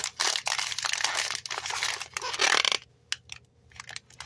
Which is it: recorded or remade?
recorded